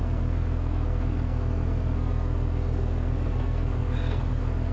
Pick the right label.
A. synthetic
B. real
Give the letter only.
A